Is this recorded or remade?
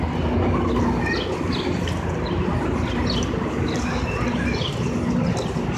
recorded